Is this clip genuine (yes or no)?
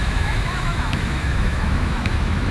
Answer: no